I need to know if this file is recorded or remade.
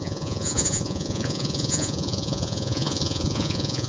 remade